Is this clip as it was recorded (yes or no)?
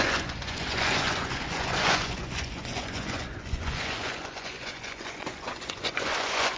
no